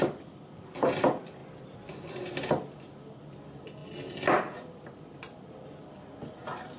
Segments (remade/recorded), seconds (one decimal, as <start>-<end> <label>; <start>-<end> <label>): 0.0-6.8 recorded